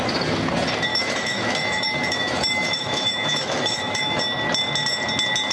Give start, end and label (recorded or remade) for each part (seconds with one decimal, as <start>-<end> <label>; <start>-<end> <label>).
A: 0.0-0.9 recorded; 0.9-4.2 remade; 4.2-5.5 recorded